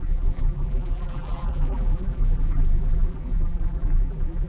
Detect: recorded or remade remade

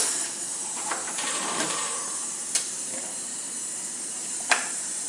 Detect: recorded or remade remade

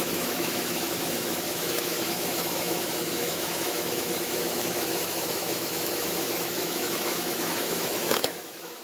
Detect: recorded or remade remade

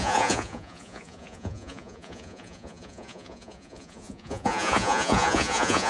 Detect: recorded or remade remade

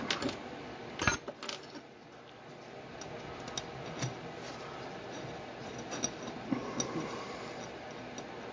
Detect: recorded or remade recorded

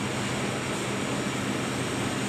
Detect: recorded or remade recorded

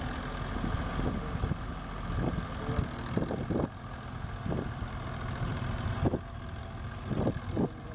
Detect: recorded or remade recorded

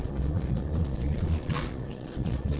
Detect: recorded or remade remade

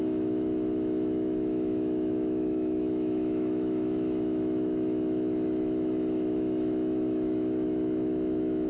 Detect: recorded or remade remade